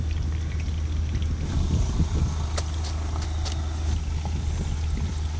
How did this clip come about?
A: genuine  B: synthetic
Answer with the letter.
A